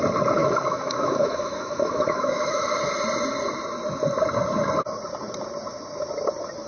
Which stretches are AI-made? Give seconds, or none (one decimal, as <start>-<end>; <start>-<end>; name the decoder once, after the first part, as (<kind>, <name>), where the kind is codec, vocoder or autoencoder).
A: 0.4-2.8 (autoencoder, DAC-VAE)